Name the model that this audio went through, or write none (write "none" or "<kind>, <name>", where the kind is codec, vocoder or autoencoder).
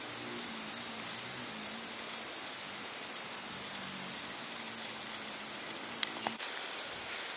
none